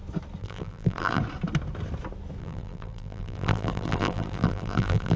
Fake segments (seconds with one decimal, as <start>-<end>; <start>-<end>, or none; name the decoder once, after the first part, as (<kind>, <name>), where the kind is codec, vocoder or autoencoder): 0.4-1.2 (vocoder, BigVGAN v2); 2.4-5.2